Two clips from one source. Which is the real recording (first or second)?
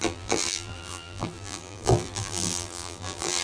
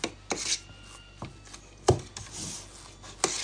second